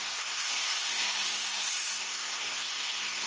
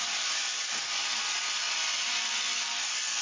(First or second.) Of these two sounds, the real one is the second